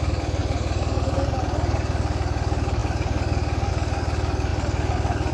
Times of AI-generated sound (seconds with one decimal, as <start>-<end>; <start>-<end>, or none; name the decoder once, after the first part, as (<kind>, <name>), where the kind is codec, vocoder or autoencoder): 0.0-5.3 (codec, DAC)